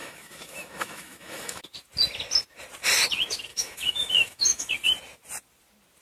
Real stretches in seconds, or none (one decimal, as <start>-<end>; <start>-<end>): 1.6-3.5; 4.7-6.0